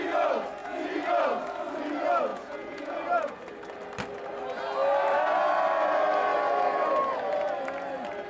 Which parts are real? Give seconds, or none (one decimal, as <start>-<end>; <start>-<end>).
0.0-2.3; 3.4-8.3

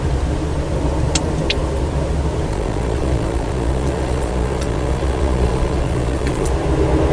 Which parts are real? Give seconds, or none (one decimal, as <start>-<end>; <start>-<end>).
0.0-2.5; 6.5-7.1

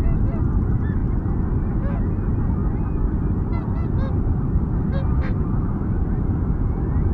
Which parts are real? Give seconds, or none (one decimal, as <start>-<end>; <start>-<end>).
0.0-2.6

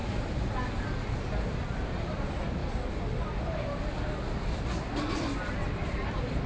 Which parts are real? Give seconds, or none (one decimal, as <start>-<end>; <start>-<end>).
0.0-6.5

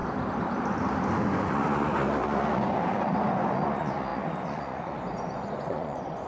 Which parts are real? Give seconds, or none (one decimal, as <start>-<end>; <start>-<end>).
0.0-1.3

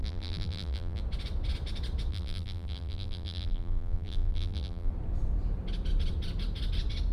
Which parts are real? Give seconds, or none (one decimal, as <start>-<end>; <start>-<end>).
1.0-2.1; 4.9-7.1

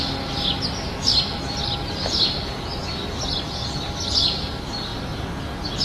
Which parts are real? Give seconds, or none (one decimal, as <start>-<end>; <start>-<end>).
0.0-5.8